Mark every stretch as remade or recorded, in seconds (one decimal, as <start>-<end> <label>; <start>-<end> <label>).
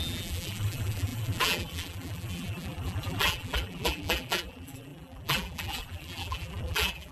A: 0.0-7.1 remade